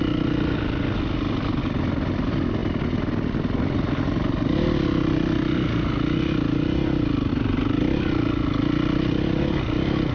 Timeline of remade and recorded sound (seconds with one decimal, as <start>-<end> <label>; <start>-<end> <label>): 0.0-10.1 recorded